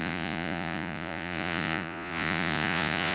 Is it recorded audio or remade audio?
remade